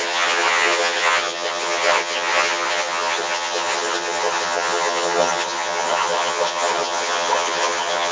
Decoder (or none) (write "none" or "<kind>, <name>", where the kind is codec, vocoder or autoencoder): vocoder, HiFi-GAN